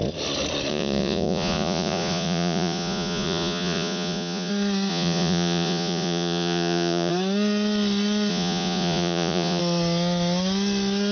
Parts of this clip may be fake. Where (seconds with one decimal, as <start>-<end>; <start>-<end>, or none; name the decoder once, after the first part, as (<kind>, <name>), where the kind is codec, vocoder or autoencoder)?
0.7-4.5 (vocoder, Vocos); 4.9-7.1; 8.3-9.6